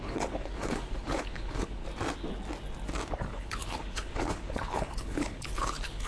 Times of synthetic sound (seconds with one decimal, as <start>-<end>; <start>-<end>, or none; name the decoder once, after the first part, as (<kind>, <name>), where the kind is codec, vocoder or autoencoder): 0.0-1.8 (codec, HILCodec); 3.1-6.1